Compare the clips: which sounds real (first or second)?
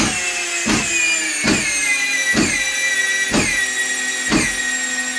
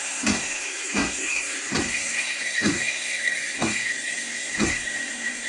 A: first